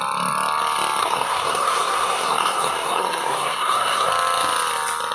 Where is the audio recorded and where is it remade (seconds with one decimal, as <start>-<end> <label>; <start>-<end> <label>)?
0.0-1.0 recorded; 1.0-4.1 remade; 4.1-5.1 recorded